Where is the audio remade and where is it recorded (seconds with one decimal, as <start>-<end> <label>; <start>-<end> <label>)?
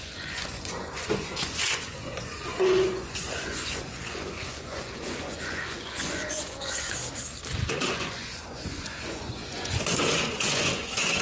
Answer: 0.0-7.0 remade; 7.0-7.7 recorded; 7.7-11.2 remade